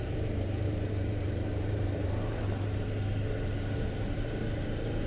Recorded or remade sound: remade